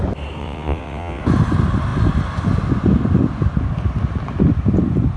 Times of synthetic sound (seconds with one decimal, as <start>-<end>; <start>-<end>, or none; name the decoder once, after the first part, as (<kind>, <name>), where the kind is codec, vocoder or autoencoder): 0.4-1.2 (vocoder, WaveNeXt)